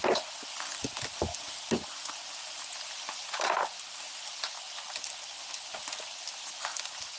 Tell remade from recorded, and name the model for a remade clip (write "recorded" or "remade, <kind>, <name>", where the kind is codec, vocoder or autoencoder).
recorded